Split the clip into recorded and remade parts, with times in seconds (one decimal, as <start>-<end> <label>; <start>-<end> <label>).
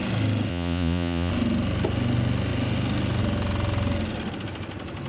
0.0-0.5 recorded; 0.5-1.3 remade; 1.3-5.1 recorded